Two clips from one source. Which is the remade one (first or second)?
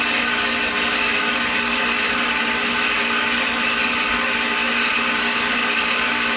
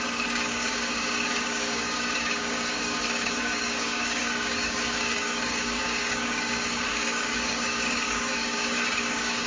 second